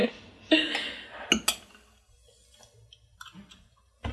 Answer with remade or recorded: recorded